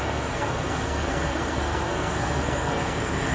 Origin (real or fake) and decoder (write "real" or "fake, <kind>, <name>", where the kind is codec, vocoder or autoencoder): fake, codec, SNAC